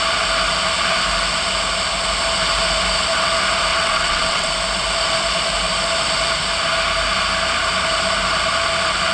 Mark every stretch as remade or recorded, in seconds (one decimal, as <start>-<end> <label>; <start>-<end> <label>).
0.0-3.7 recorded; 3.7-4.5 remade; 4.5-9.1 recorded